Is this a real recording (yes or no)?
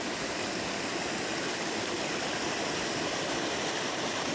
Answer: yes